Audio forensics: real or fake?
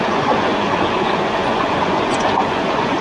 fake